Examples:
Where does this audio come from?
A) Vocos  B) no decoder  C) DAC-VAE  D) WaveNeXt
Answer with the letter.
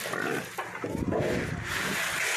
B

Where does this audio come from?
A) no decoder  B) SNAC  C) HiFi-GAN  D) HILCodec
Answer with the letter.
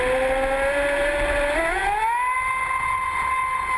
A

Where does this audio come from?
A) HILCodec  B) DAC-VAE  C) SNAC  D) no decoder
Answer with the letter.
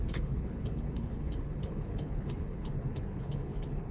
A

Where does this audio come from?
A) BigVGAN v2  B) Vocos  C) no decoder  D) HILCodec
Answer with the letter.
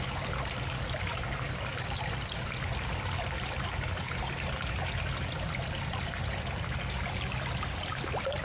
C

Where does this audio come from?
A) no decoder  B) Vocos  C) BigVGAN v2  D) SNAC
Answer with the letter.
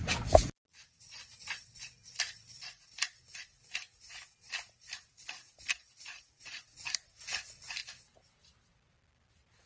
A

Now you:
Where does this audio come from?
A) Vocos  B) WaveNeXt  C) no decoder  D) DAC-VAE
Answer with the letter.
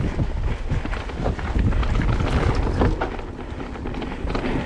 C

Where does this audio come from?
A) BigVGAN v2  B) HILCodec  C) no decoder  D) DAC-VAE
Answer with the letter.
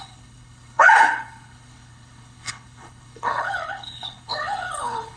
B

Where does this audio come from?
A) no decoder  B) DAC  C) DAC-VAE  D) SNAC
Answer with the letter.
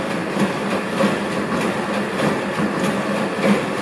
A